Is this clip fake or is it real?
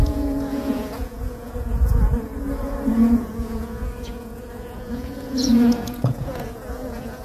fake